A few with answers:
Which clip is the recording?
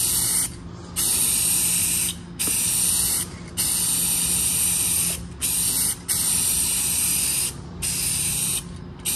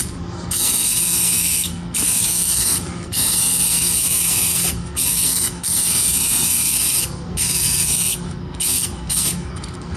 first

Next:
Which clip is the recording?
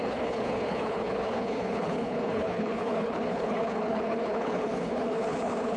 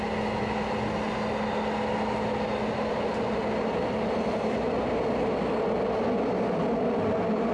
second